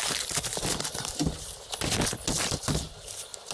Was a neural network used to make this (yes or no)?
no